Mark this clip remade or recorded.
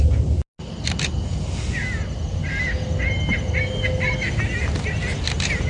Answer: recorded